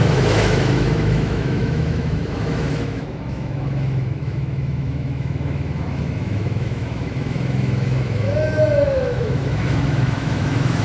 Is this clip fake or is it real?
fake